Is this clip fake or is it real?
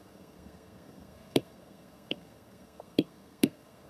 fake